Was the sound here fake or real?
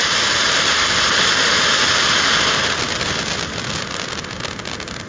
real